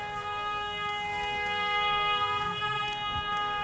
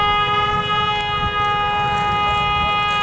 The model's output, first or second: first